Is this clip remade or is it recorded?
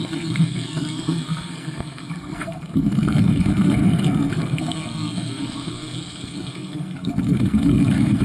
remade